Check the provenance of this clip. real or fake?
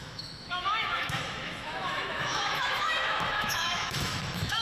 fake